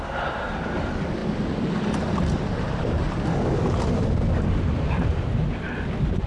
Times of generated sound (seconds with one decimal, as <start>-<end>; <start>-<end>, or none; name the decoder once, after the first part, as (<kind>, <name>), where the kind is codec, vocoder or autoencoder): none